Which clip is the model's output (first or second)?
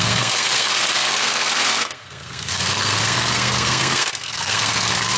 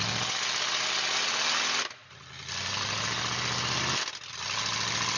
first